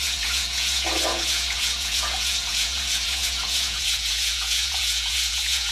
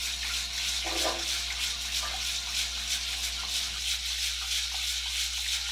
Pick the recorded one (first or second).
second